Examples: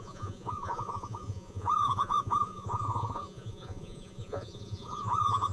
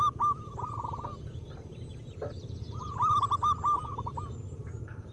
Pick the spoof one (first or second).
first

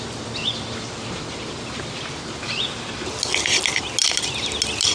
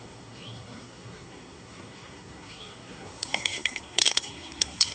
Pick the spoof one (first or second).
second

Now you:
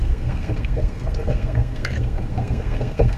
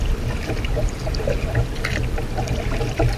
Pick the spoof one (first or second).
first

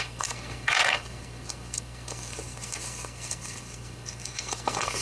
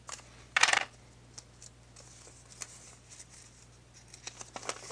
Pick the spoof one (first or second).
first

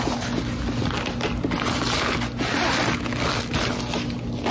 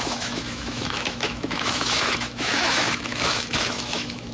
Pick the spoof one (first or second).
second